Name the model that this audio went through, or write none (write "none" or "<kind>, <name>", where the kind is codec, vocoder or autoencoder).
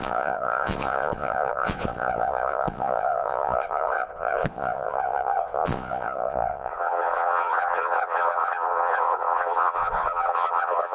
vocoder, Vocos